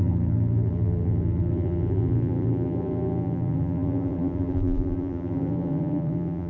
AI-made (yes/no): yes